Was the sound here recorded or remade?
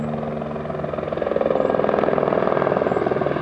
recorded